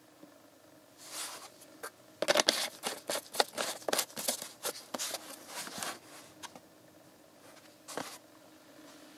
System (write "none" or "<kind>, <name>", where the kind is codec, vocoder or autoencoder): none